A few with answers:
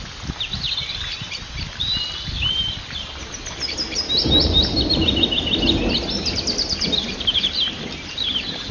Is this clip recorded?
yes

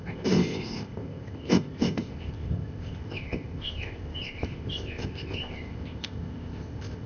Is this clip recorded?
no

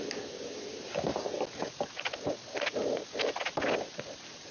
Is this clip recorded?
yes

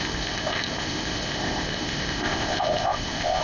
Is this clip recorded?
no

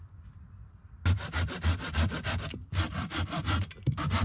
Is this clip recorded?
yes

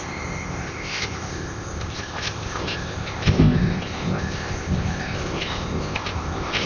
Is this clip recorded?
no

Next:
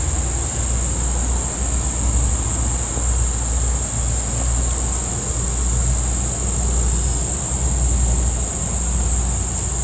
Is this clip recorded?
yes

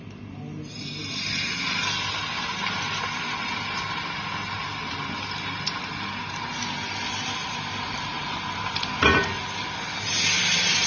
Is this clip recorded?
yes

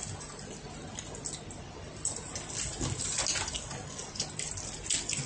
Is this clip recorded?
yes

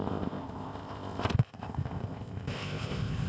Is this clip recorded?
no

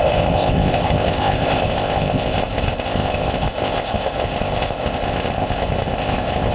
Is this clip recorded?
no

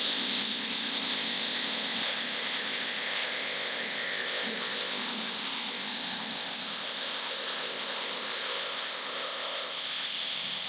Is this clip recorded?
no